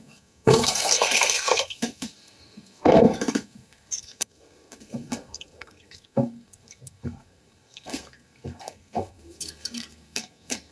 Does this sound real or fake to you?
fake